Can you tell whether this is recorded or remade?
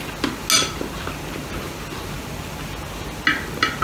recorded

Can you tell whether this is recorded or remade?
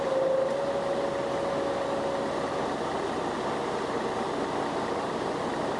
recorded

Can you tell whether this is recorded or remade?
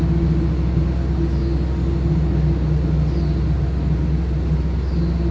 recorded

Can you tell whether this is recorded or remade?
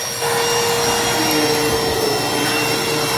recorded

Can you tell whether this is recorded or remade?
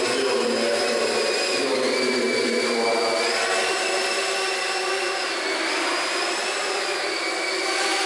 recorded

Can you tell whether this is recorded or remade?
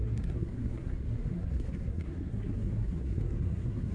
remade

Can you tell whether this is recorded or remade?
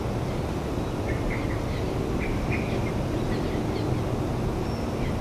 recorded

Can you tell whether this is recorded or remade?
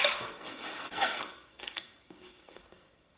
remade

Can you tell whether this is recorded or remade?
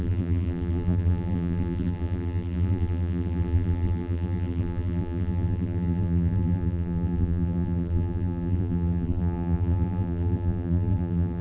remade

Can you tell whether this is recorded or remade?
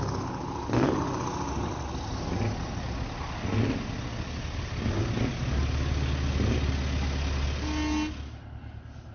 recorded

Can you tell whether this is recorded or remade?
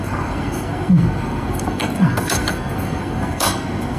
remade